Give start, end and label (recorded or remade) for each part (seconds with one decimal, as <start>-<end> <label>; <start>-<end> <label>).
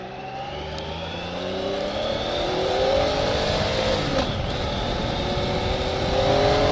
0.0-4.1 remade; 4.1-6.7 recorded